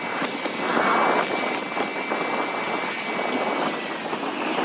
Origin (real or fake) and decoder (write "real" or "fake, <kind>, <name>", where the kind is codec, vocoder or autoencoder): real